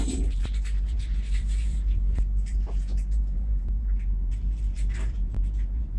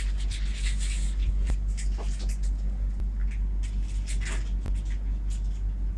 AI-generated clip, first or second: first